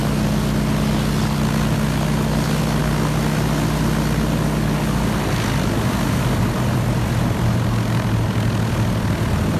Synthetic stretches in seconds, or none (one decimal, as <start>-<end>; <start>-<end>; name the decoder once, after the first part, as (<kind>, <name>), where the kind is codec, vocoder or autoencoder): none